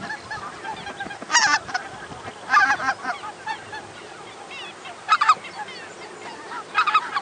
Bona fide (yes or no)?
yes